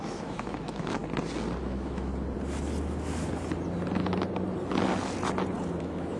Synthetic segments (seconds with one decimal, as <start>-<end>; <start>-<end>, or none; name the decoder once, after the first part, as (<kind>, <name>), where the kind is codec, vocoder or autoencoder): 0.0-1.0 (autoencoder, DAC-VAE); 1.6-2.1; 5.8-6.2

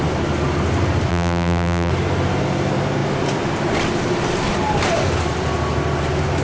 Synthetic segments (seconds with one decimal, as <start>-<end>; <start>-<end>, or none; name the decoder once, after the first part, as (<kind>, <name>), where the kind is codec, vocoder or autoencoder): 1.1-1.9 (vocoder, BigVGAN v2)

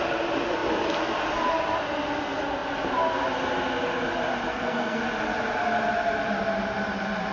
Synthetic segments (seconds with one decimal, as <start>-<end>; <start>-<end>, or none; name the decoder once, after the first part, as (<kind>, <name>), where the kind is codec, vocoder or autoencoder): 4.5-5.0 (codec, SNAC)

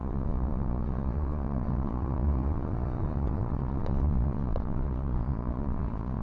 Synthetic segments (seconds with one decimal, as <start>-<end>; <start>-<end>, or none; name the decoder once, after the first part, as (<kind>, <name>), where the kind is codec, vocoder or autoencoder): 0.0-6.2 (vocoder, Vocos)

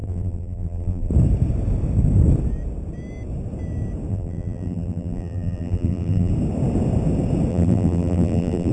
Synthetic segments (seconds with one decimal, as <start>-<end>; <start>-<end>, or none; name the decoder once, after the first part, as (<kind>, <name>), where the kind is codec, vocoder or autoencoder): 0.0-1.1 (vocoder, BigVGAN v2); 4.1-6.3; 7.5-8.7